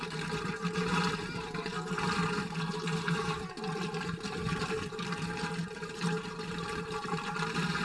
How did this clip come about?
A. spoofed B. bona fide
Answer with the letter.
A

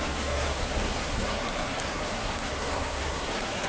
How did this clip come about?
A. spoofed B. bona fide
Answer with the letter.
A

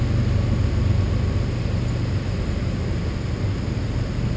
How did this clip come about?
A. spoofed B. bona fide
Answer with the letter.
B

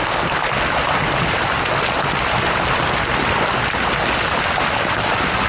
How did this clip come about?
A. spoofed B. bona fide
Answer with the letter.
B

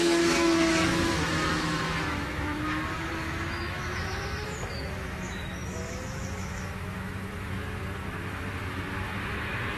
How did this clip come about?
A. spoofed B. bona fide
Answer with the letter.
A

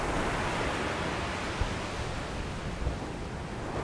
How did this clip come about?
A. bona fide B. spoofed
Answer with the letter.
A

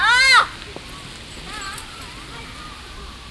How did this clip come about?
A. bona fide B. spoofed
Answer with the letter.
A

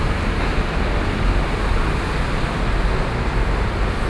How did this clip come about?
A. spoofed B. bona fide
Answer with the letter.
B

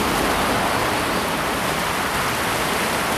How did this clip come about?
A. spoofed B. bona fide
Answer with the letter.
B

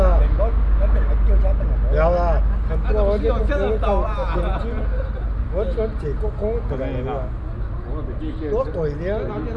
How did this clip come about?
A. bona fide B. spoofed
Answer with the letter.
A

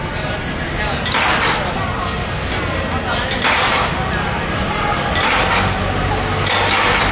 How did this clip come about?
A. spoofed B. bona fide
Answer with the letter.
B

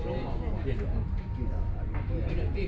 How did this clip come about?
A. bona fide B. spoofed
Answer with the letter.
A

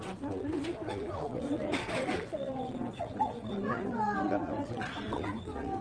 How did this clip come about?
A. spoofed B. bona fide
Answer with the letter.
A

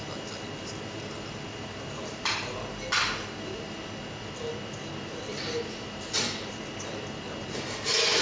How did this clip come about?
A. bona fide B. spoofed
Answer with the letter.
A